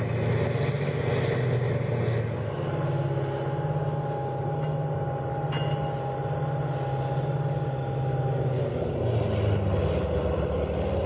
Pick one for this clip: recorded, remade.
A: recorded